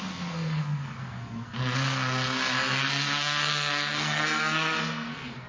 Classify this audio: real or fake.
fake